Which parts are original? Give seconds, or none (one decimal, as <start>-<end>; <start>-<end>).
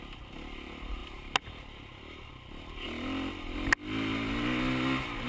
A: 0.0-5.3